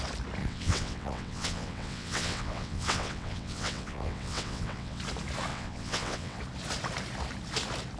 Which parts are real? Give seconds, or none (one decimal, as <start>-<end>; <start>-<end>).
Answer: 0.0-0.4; 5.0-5.5; 6.4-8.0